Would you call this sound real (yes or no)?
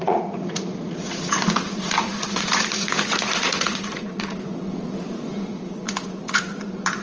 no